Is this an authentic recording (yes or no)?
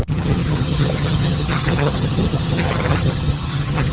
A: no